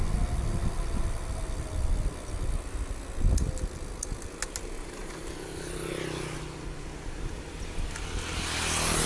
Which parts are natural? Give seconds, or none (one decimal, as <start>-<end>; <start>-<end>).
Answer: 0.0-9.1